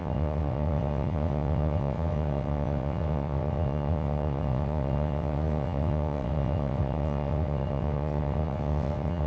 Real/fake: fake